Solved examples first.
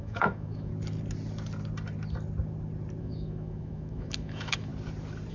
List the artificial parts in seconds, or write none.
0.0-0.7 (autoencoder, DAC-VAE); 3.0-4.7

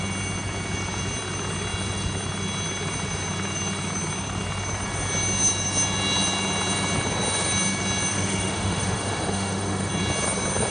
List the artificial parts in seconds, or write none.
8.1-9.9 (autoencoder, DAC-VAE)

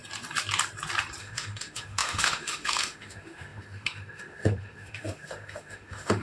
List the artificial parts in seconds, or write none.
1.2-6.2 (autoencoder, DAC-VAE)

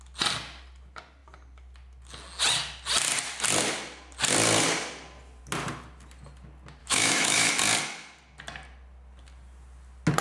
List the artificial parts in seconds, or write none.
6.8-7.5 (autoencoder, DAC-VAE)

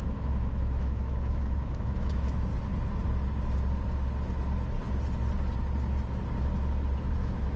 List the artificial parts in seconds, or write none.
0.0-2.5 (autoencoder, DAC-VAE); 7.1-7.6

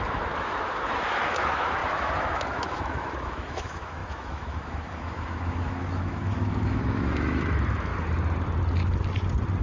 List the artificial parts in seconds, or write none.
0.0-7.9 (autoencoder, DAC-VAE)

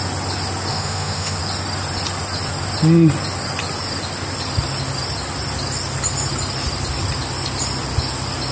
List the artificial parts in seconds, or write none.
0.7-1.4 (autoencoder, DAC-VAE)

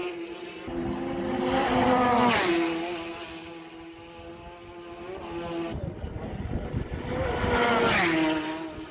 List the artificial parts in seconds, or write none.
none